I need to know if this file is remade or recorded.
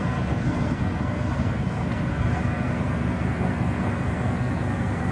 remade